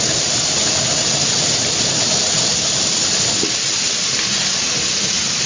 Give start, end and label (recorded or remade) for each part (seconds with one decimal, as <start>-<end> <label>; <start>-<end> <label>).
0.0-5.5 recorded

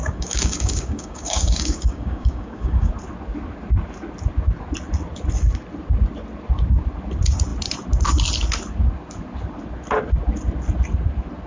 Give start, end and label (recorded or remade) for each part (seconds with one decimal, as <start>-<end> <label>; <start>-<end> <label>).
0.0-2.9 remade; 2.9-11.5 recorded

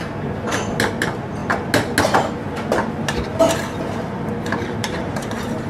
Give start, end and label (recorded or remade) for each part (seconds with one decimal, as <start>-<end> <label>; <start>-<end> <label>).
0.0-3.3 recorded; 3.3-5.7 remade

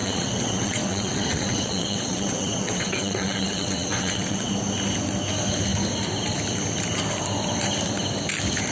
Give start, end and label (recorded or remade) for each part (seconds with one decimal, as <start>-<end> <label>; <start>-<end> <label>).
0.0-4.5 remade; 4.5-8.7 recorded

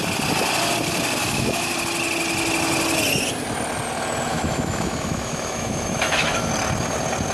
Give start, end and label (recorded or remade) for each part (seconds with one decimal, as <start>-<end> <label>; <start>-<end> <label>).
0.0-1.2 recorded; 1.2-1.7 remade; 1.7-4.3 recorded; 4.3-6.5 remade; 6.5-7.3 recorded

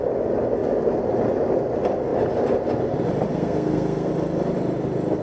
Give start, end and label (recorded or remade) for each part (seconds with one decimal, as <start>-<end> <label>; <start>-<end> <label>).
0.0-3.3 recorded; 3.3-4.1 remade; 4.1-5.2 recorded